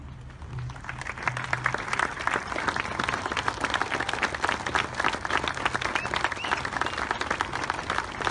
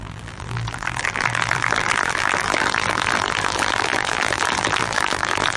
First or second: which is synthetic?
second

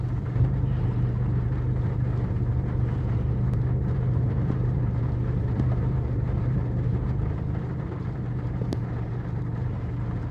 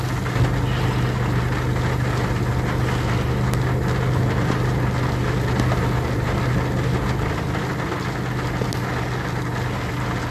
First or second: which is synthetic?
first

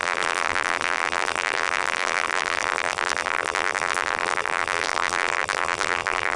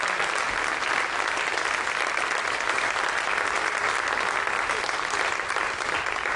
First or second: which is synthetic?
first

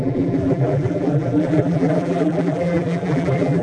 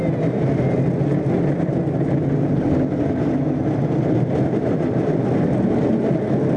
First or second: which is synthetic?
first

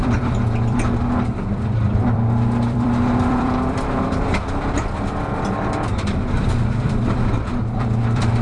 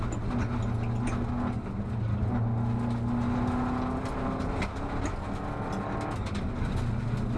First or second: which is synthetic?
first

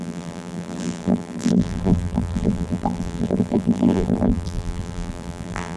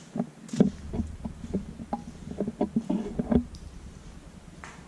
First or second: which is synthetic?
first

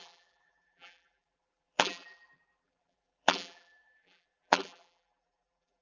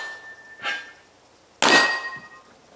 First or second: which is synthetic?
first